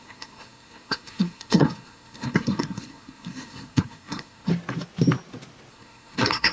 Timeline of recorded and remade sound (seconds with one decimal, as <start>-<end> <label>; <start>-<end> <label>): 0.0-4.5 remade; 4.5-5.7 recorded; 5.7-6.5 remade